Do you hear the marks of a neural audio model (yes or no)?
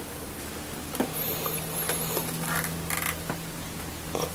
no